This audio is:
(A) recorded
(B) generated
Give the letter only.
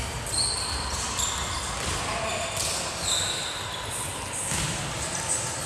A